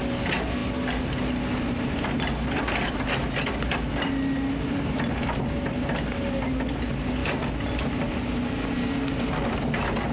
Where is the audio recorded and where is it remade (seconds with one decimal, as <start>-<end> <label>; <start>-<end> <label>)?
0.0-10.1 recorded